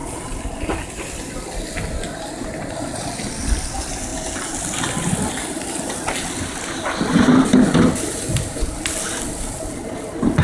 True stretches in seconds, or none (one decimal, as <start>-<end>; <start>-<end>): 0.0-10.4